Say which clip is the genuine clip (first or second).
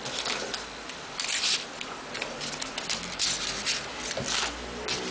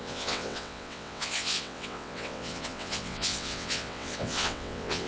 first